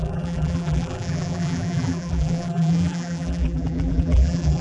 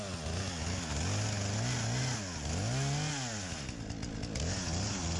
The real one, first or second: second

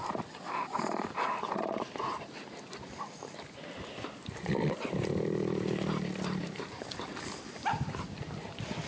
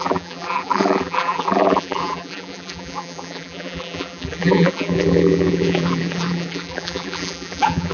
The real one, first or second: first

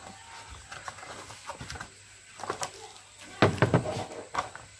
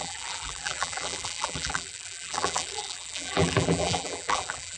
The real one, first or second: first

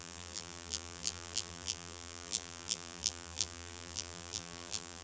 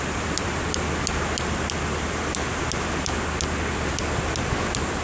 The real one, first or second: second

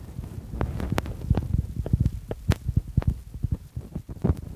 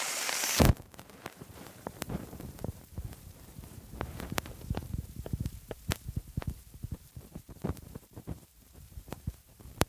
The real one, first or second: first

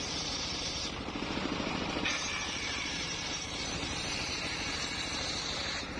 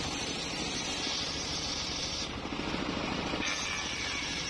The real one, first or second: second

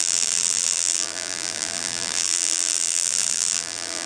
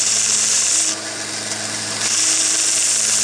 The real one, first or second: second